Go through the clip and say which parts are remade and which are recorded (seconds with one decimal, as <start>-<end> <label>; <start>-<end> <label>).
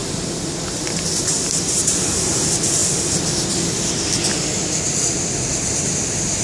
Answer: 0.0-6.4 recorded